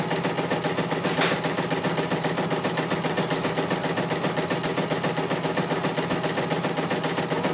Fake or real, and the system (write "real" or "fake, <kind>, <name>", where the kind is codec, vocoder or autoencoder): real